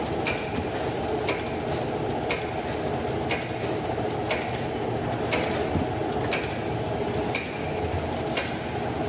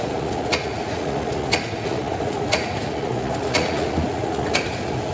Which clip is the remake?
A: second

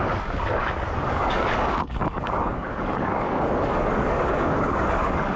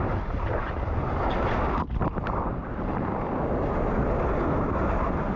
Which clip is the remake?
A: first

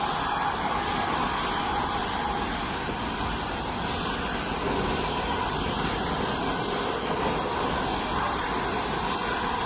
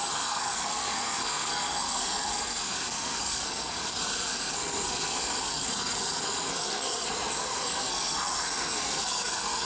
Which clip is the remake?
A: second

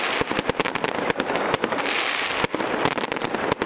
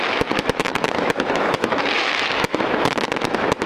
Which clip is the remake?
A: second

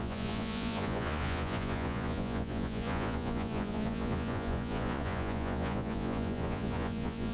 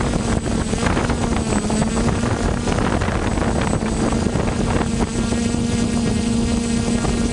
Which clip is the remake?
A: first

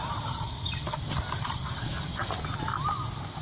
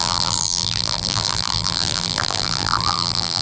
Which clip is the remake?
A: second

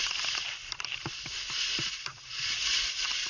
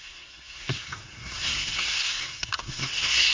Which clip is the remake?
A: second